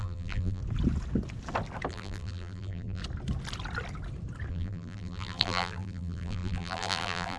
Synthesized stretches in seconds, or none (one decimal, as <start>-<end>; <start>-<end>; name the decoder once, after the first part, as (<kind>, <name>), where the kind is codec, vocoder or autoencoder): 0.0-0.6 (vocoder, BigVGAN v2); 1.9-3.0; 4.5-7.4